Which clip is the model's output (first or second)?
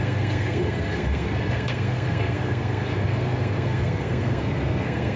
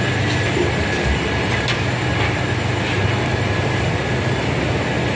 first